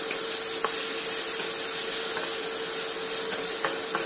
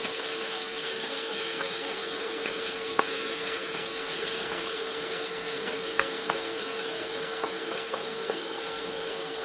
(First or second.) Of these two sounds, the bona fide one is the first